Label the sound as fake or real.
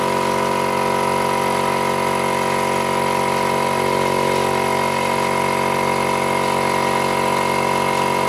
real